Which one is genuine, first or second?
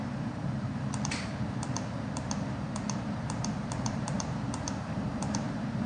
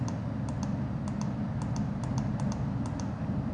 second